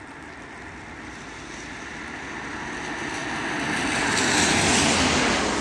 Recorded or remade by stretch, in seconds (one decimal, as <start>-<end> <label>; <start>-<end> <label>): 0.0-5.6 recorded